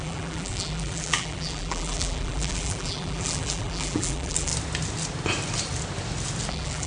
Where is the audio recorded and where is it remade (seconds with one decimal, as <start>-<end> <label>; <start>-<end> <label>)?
0.0-4.5 remade; 4.5-6.5 recorded; 6.5-6.9 remade